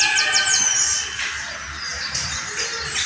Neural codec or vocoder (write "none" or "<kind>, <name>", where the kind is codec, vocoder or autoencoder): none